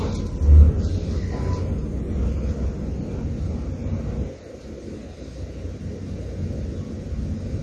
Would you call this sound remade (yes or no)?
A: no